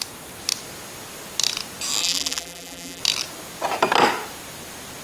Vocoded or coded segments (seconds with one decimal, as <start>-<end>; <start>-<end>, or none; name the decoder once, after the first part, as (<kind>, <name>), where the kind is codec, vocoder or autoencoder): 2.0-3.0 (vocoder, BigVGAN v2)